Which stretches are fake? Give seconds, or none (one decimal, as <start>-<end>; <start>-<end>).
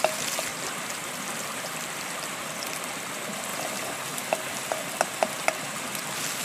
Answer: none